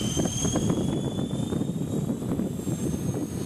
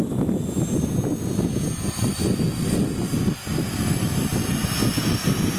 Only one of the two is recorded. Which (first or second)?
second